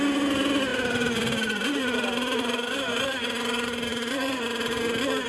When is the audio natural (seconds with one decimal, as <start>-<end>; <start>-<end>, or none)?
0.0-0.7; 3.0-3.9; 4.8-5.3